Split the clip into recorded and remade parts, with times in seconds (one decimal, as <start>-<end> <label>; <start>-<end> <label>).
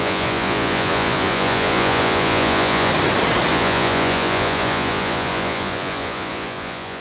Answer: 0.0-2.9 remade; 2.9-3.5 recorded; 3.5-7.0 remade